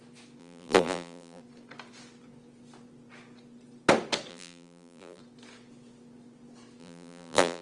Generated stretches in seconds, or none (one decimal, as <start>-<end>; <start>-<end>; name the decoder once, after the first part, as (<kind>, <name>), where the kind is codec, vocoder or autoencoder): 0.4-1.4 (vocoder, BigVGAN v2); 4.3-5.2; 6.8-7.6